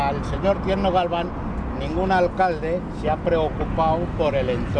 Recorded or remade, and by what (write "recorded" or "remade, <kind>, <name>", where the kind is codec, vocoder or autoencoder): recorded